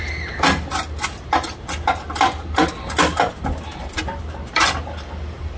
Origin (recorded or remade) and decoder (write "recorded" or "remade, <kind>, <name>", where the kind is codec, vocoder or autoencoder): recorded